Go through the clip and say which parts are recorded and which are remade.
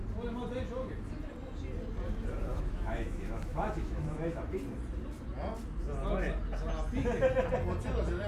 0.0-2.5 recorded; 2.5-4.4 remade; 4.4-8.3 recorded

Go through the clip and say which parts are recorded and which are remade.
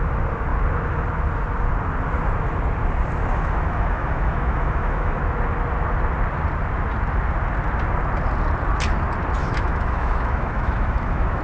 0.0-3.3 recorded; 3.3-5.2 remade; 5.2-9.4 recorded; 9.4-11.4 remade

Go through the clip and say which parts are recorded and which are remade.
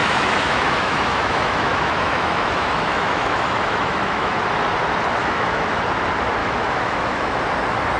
0.0-4.4 remade; 4.4-5.2 recorded; 5.2-5.8 remade; 5.8-6.4 recorded; 6.4-7.4 remade; 7.4-8.0 recorded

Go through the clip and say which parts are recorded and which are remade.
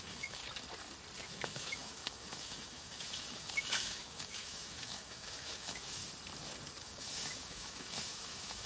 0.0-0.4 remade; 0.4-1.2 recorded; 1.2-6.0 remade; 6.0-6.8 recorded; 6.8-8.7 remade